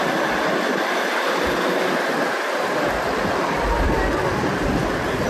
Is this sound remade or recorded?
remade